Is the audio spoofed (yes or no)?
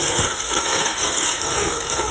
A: yes